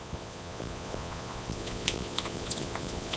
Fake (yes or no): yes